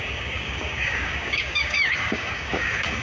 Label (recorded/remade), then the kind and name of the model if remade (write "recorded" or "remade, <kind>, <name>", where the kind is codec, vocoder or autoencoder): remade, codec, DAC